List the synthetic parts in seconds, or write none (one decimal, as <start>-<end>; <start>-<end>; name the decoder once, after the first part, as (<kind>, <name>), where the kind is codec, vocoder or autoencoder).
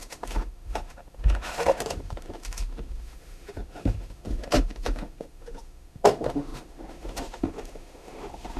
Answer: 0.0-8.6 (autoencoder, DAC-VAE)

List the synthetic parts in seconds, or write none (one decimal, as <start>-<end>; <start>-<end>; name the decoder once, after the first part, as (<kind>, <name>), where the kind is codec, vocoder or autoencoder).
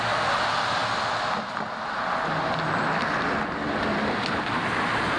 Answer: none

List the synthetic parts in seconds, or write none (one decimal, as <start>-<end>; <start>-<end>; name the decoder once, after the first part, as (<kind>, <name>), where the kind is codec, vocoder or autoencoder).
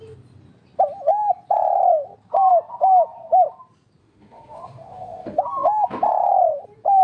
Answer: 4.0-5.4 (autoencoder, DAC-VAE)